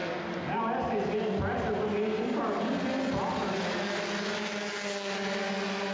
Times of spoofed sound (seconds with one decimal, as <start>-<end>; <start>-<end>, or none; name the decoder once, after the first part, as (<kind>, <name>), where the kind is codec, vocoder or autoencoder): none